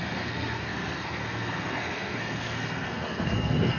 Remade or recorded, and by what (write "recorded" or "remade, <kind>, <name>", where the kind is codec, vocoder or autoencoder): remade, codec, SNAC